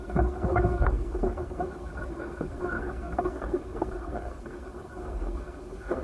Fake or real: fake